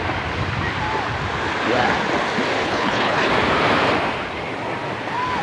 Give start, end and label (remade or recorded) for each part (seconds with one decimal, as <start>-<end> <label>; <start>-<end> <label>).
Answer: 0.0-2.6 recorded; 2.6-3.3 remade; 3.3-5.4 recorded

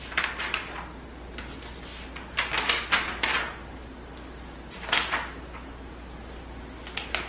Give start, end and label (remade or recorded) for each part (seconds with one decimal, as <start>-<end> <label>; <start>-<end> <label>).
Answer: 0.0-7.3 recorded

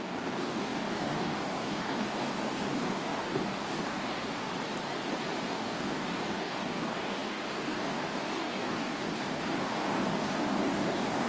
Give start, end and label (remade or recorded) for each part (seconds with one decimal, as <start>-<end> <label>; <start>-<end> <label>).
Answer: 0.0-4.5 remade; 4.5-5.4 recorded; 5.4-11.3 remade

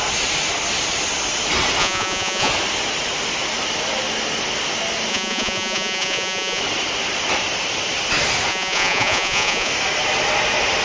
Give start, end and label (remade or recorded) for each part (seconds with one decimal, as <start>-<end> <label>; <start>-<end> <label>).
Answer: 0.0-1.8 recorded; 1.8-2.5 remade; 2.5-5.1 recorded; 5.1-6.6 remade; 6.6-8.5 recorded; 8.5-9.7 remade; 9.7-10.8 recorded

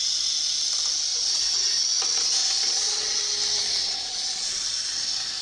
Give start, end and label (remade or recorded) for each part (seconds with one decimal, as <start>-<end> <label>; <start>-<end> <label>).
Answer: 0.0-1.1 recorded; 1.1-1.8 remade; 1.8-2.4 recorded; 2.4-3.2 remade; 3.2-3.6 recorded; 3.6-4.7 remade; 4.7-5.4 recorded

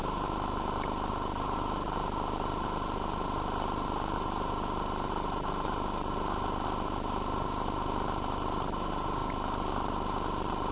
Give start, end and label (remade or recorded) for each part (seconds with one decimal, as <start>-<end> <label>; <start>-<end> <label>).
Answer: 0.0-10.7 recorded